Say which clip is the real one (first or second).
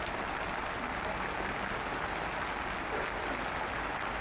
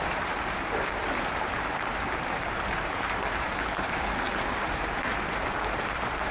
first